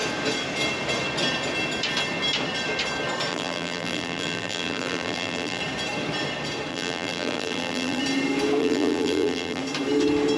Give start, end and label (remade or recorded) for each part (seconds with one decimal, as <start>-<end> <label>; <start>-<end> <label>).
0.0-3.3 recorded; 3.3-5.6 remade; 5.6-6.7 recorded; 6.7-8.0 remade; 8.0-8.6 recorded; 8.6-9.6 remade; 9.6-10.4 recorded